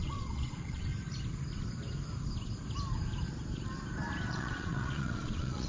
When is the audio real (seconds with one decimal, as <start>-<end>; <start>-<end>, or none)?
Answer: 0.9-4.3